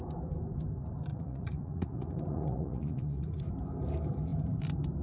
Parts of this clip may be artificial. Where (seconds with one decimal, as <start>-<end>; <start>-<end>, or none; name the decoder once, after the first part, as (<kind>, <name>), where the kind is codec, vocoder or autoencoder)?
1.1-3.4 (vocoder, Vocos)